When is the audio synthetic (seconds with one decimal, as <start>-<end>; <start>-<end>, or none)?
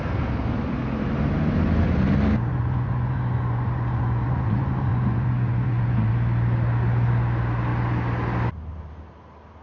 2.5-6.1